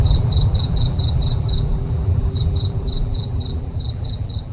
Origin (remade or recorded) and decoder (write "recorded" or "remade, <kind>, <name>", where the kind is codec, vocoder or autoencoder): remade, vocoder, BigVGAN v2